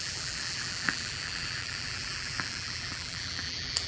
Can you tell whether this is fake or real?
fake